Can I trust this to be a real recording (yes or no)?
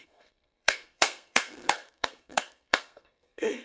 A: no